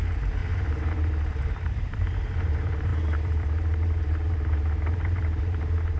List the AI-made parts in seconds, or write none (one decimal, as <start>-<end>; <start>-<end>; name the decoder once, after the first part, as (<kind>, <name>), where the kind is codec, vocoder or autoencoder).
0.0-6.0 (vocoder, BigVGAN v2)